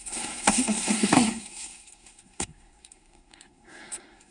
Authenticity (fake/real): fake